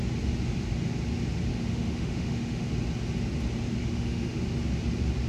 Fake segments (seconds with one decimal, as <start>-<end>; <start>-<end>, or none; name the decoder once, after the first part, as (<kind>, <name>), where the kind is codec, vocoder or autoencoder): 1.5-2.7 (autoencoder, DAC-VAE); 3.8-4.4